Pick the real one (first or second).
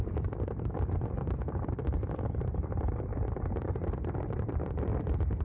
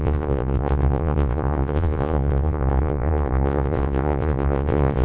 first